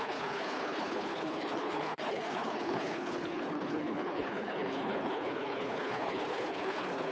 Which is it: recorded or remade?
remade